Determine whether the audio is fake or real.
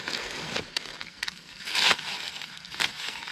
fake